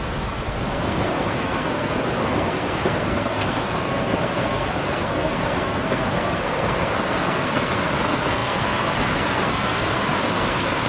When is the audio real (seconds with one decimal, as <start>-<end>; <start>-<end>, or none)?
none